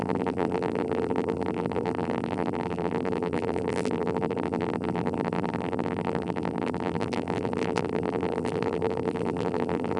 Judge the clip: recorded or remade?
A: remade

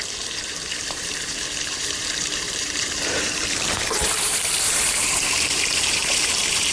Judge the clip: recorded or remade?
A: remade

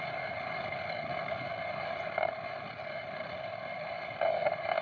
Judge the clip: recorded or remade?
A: recorded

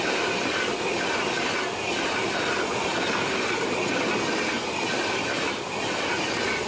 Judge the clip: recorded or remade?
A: recorded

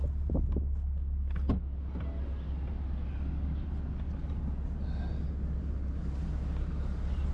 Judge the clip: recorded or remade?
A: recorded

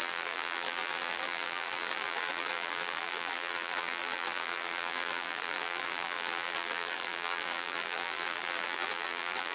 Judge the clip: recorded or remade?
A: remade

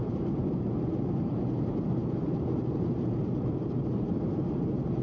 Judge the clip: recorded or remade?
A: remade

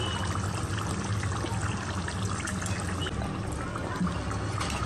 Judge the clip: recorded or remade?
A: recorded